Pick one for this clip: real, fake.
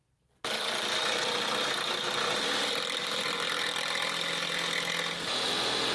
real